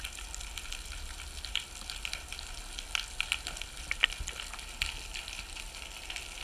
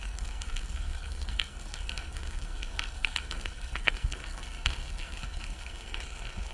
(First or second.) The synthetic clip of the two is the second